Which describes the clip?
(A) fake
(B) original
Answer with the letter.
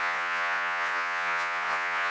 A